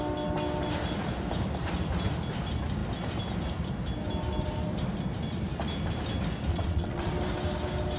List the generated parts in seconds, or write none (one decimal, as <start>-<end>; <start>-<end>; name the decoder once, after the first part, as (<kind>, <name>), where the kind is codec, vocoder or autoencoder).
6.5-7.1 (vocoder, WaveNeXt)